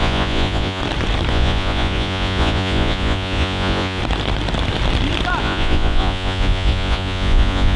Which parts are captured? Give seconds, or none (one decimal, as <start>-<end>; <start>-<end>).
0.8-1.3; 4.0-5.4